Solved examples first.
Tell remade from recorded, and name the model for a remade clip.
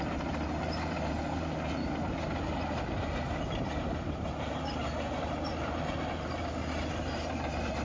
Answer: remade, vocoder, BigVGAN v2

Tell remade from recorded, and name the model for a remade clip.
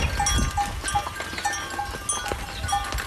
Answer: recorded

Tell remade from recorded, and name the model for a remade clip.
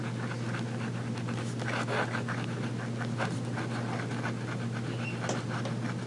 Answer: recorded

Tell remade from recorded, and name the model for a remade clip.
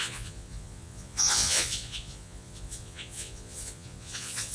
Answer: remade, vocoder, Vocos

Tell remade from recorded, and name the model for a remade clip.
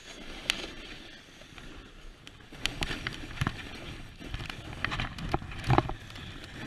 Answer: recorded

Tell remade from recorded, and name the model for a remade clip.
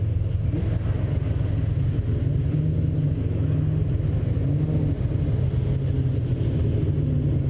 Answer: recorded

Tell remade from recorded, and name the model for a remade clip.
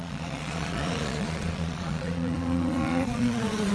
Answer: remade, vocoder, Vocos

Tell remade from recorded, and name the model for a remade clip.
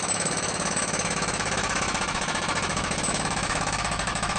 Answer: remade, autoencoder, DAC-VAE